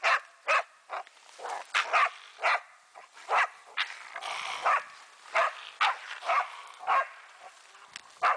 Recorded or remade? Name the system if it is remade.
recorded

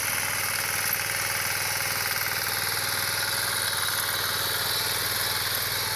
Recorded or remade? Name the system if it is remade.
recorded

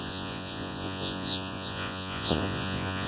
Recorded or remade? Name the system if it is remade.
remade, vocoder, Vocos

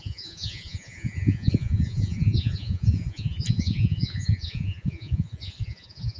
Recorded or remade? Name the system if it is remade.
remade, vocoder, Vocos